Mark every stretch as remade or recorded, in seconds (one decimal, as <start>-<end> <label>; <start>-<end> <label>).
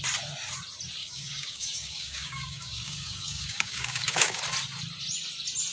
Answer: 0.0-1.0 recorded; 1.0-4.4 remade; 4.4-5.7 recorded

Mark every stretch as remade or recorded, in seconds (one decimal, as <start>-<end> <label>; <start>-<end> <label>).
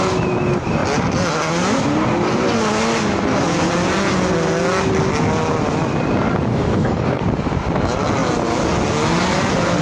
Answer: 0.0-6.5 recorded; 6.5-7.2 remade; 7.2-9.8 recorded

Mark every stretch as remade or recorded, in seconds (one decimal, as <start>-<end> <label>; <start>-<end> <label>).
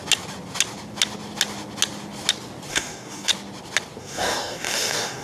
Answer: 0.0-2.7 recorded; 2.7-3.3 remade; 3.3-4.0 recorded; 4.0-5.2 remade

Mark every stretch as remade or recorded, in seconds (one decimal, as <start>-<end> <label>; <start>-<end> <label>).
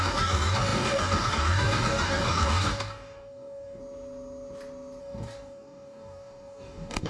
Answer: 0.0-3.8 remade; 3.8-5.0 recorded; 5.0-7.1 remade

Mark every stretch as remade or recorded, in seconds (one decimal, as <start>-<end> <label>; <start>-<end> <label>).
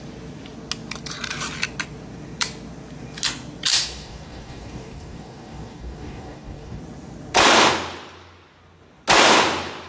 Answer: 0.0-3.7 recorded; 3.7-6.8 remade; 6.8-9.9 recorded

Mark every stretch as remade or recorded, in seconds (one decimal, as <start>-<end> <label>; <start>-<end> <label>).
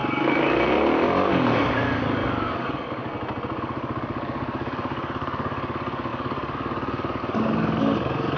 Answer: 0.0-3.1 remade; 3.1-3.6 recorded; 3.6-8.4 remade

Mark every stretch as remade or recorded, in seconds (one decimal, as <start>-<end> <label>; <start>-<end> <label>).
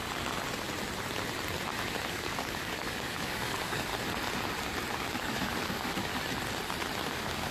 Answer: 0.0-2.1 recorded; 2.1-3.9 remade; 3.9-4.9 recorded; 4.9-6.1 remade; 6.1-7.1 recorded; 7.1-7.5 remade